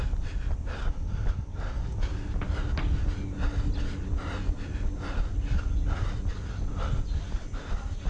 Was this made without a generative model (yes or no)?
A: yes